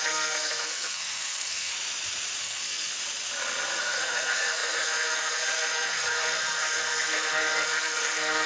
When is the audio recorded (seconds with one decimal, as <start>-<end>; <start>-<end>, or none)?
1.7-2.4; 2.9-3.8